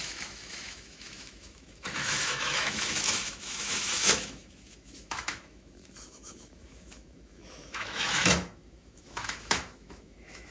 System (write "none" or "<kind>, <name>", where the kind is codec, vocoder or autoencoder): autoencoder, DAC-VAE